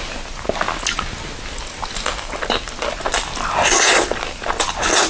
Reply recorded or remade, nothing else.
recorded